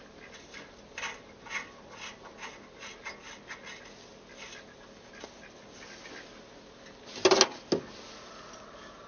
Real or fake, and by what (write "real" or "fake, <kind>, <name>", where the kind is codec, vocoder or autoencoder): real